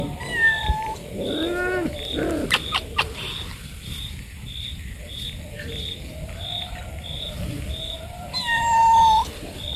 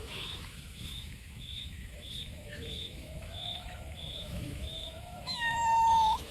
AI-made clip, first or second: second